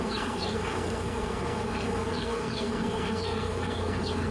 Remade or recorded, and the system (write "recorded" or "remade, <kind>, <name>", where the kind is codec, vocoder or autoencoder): remade, codec, SNAC